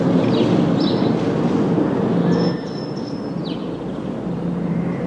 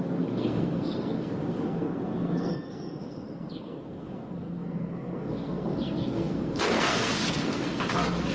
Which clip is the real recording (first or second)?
first